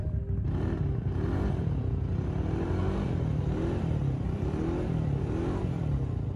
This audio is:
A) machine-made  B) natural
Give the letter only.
A